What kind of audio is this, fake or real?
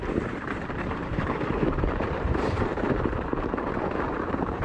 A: fake